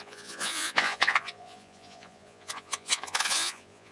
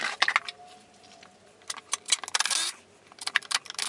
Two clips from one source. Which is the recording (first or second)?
second